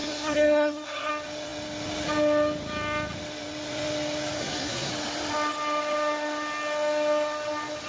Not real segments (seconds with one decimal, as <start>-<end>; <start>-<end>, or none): 0.0-1.1; 4.4-4.9